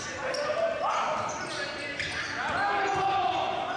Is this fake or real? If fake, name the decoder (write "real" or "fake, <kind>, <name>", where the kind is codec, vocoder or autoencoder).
real